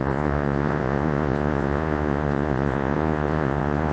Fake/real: fake